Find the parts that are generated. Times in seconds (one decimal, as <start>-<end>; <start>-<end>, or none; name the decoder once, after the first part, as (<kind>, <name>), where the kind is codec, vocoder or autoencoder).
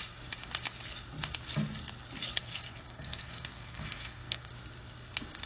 2.4-4.5 (codec, SNAC)